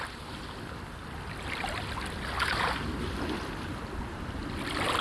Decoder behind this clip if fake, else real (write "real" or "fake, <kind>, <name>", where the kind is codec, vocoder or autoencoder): real